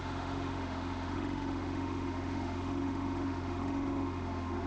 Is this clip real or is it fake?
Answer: fake